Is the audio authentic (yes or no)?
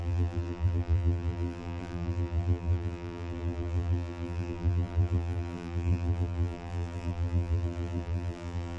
no